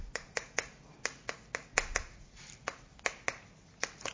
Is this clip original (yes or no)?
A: yes